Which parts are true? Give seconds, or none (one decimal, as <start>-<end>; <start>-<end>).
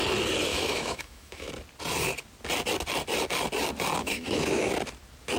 0.0-0.5; 1.5-4.0; 4.7-5.4